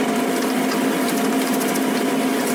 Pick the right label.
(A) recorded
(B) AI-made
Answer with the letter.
A